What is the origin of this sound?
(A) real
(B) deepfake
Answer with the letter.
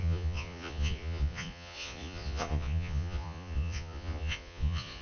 B